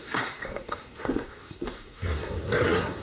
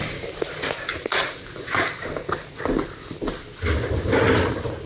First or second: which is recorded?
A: second